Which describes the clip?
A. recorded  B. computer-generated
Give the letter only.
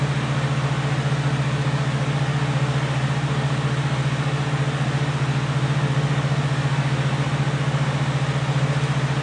A